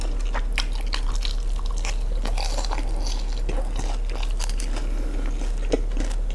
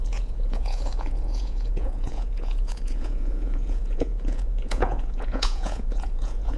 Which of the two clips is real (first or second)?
first